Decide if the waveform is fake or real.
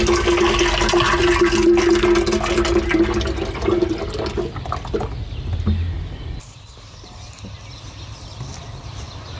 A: real